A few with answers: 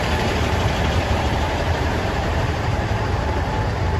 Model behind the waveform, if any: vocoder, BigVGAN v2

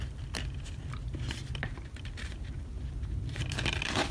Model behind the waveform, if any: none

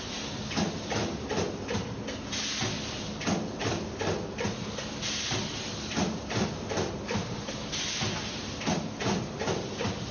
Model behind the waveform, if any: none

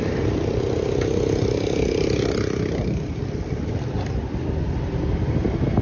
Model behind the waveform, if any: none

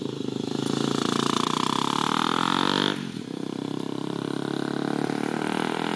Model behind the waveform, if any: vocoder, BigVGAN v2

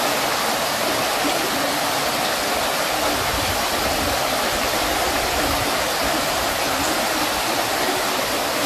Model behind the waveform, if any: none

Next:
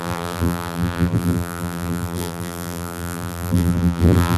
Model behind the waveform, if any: vocoder, BigVGAN v2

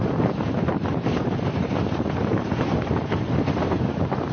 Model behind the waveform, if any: vocoder, BigVGAN v2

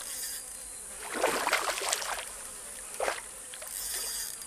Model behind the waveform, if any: vocoder, BigVGAN v2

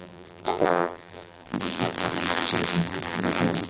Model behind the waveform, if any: vocoder, BigVGAN v2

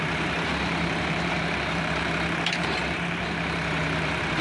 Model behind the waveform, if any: vocoder, BigVGAN v2